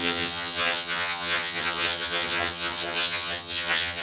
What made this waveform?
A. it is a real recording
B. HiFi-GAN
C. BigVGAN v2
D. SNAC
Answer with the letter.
B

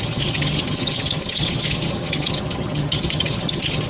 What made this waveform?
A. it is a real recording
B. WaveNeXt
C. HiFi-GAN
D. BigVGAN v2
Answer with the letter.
C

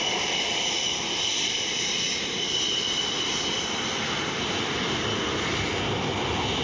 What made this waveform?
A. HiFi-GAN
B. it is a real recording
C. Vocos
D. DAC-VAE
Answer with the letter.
B